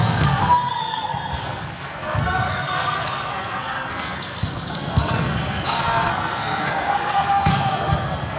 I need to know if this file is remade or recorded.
remade